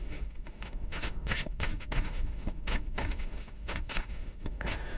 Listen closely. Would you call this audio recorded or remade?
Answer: remade